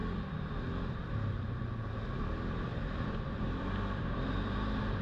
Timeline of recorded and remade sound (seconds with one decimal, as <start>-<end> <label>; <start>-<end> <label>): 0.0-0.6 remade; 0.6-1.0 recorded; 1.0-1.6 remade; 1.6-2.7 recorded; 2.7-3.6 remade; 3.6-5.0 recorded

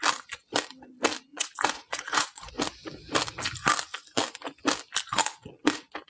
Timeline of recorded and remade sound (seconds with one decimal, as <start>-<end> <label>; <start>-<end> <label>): 0.0-1.3 recorded; 1.3-2.5 remade; 2.5-6.1 recorded

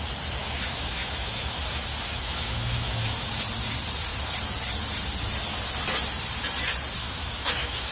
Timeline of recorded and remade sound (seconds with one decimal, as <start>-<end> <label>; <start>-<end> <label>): 0.0-0.4 recorded; 0.4-3.3 remade; 3.3-7.0 recorded; 7.0-7.9 remade

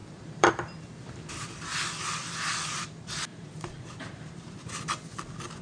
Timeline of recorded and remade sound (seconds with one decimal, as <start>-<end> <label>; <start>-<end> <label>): 0.0-0.5 remade; 0.5-3.3 recorded; 3.3-4.7 remade; 4.7-5.6 recorded

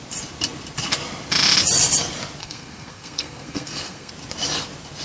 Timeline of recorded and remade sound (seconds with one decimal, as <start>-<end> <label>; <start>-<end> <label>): 0.0-2.4 recorded; 2.4-4.1 remade; 4.1-5.0 recorded

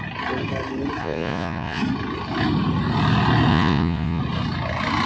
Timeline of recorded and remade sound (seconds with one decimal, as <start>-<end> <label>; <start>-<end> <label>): 0.0-1.0 recorded; 1.0-1.8 remade; 1.8-3.5 recorded; 3.5-4.2 remade; 4.2-5.1 recorded

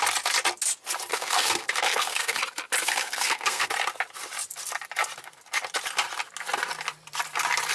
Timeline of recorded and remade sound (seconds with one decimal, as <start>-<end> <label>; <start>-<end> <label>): 0.0-1.1 recorded; 1.1-2.4 remade; 2.4-2.8 recorded; 2.8-3.7 remade; 3.7-7.7 recorded